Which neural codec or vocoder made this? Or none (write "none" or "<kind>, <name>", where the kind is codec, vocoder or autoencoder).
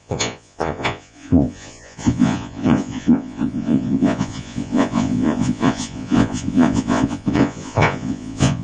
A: vocoder, Vocos